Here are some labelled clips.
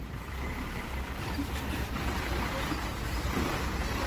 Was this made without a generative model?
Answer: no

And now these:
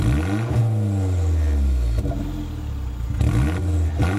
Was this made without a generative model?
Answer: yes